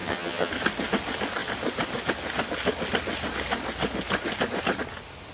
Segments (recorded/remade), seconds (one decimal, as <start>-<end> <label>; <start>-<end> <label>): 0.0-0.5 remade; 0.5-5.3 recorded